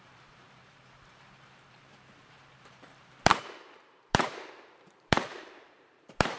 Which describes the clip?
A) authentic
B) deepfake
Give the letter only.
B